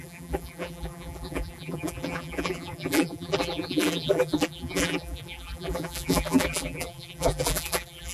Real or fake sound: fake